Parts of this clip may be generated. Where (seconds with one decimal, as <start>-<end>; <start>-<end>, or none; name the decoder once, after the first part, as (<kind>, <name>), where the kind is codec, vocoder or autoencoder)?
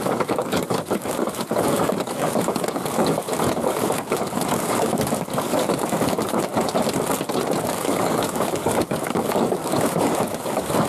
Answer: 0.0-6.5 (codec, DAC); 7.6-10.9